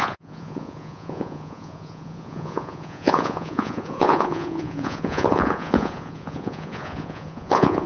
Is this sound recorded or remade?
remade